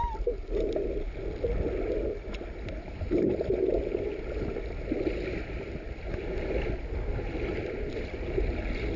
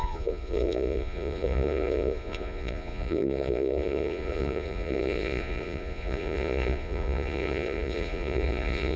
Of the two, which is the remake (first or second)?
second